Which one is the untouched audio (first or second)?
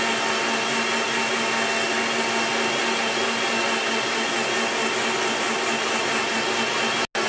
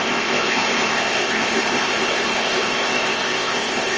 first